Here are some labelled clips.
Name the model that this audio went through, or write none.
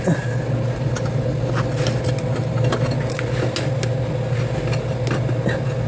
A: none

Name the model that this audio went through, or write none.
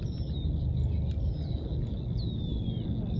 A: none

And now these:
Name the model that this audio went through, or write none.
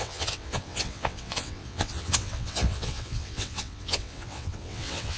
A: vocoder, WaveNeXt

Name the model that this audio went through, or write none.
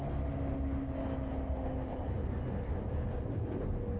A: none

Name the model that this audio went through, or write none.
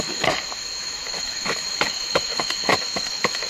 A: autoencoder, DAC-VAE